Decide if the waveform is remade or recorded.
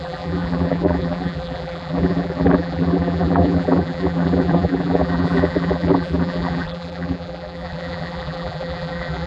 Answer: remade